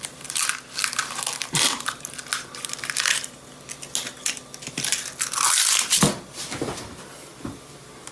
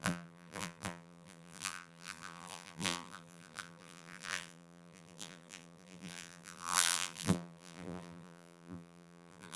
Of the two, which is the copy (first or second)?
second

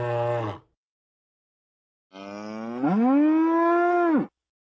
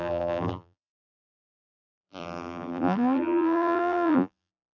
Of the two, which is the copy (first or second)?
second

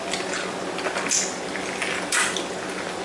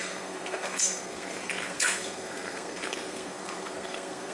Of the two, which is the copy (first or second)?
second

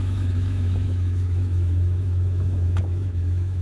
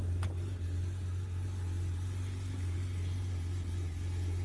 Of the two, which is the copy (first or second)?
first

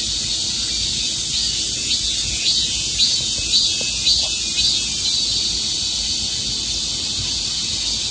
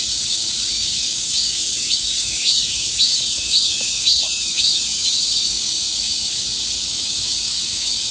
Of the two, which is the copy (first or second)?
second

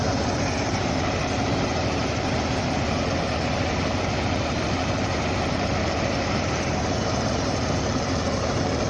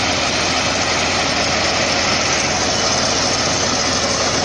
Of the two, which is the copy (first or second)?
first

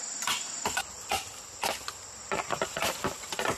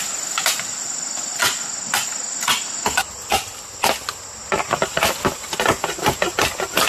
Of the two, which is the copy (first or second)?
first